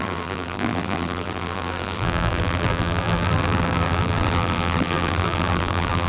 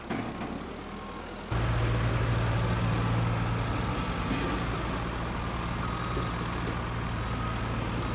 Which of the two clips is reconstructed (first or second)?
first